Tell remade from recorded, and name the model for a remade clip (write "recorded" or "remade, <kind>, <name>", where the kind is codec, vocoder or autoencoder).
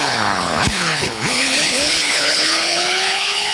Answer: remade, codec, HILCodec